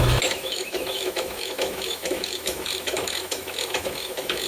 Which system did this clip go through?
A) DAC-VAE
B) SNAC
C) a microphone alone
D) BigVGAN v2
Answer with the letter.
A